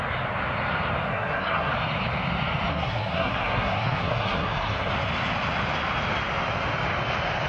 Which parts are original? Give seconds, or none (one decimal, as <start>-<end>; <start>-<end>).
0.0-1.1; 1.7-2.7; 4.9-7.5